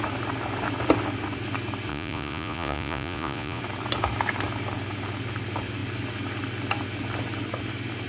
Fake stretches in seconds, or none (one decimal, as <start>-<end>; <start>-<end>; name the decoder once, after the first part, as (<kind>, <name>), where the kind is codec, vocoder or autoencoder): 1.9-3.6 (vocoder, Vocos)

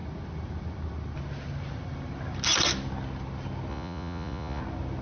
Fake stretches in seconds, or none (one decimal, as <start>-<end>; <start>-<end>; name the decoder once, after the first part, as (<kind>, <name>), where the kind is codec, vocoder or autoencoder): 3.7-4.6 (vocoder, Vocos)